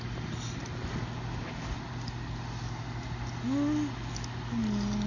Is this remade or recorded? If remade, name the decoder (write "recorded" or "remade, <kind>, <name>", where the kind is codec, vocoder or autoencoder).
recorded